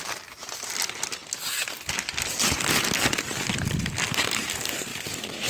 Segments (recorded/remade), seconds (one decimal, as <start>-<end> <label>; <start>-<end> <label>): 0.0-5.5 recorded